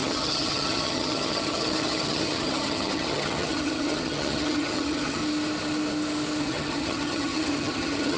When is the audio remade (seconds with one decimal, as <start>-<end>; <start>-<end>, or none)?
0.0-5.2; 6.4-8.2